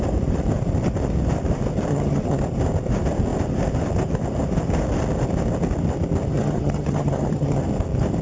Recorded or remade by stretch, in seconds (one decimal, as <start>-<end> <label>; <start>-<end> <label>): 0.0-1.9 recorded; 1.9-2.4 remade; 2.4-6.3 recorded; 6.3-7.6 remade; 7.6-8.2 recorded